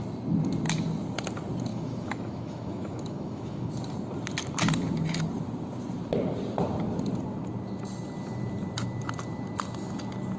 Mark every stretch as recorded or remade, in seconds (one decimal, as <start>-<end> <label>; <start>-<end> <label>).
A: 0.0-1.7 recorded; 1.7-3.7 remade; 3.7-10.4 recorded